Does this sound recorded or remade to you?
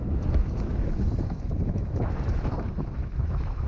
remade